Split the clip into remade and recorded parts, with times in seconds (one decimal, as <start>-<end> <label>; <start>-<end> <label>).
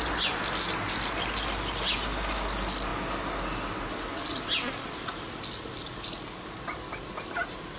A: 0.0-7.8 recorded